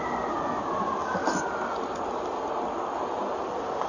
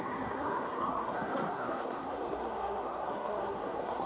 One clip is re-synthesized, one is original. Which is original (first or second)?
first